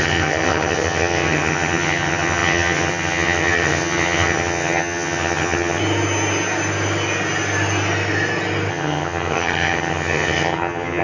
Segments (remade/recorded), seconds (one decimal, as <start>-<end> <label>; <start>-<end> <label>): 0.0-5.8 remade; 5.8-8.7 recorded; 8.7-11.0 remade